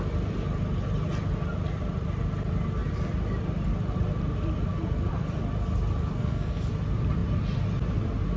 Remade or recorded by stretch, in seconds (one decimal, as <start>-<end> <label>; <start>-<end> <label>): 0.0-6.2 recorded; 6.2-6.7 remade; 6.7-8.4 recorded